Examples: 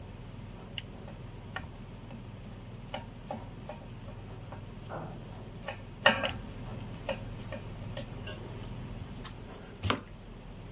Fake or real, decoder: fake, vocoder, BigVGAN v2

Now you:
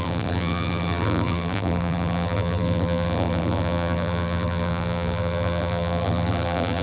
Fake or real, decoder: fake, vocoder, BigVGAN v2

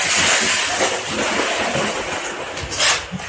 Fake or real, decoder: real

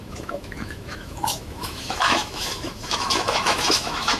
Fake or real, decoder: fake, autoencoder, DAC-VAE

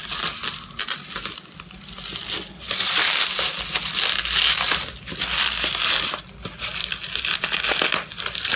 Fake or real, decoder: real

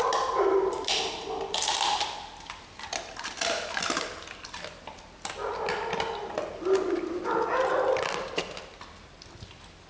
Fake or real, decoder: real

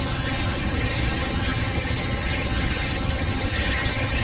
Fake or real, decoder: fake, vocoder, HiFi-GAN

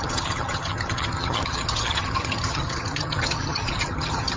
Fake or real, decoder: fake, vocoder, HiFi-GAN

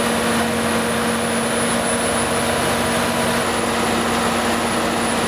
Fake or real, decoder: real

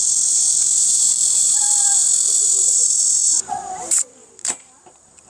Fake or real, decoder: fake, vocoder, BigVGAN v2